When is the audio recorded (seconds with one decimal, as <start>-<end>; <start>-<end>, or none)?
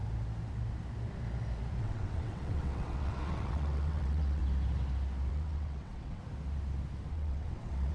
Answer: 0.0-1.8; 4.4-5.3; 6.2-7.1